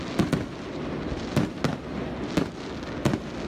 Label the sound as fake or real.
real